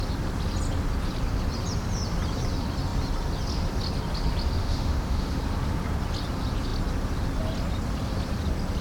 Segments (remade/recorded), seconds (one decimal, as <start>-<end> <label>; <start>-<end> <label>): 0.0-4.6 recorded; 4.6-5.4 remade; 5.4-8.8 recorded